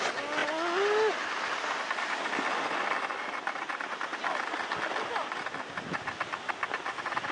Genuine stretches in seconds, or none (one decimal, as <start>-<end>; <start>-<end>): 0.0-7.3